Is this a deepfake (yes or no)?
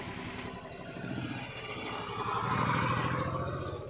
no